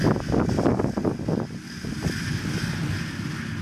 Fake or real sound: real